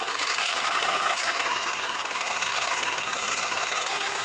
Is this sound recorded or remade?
remade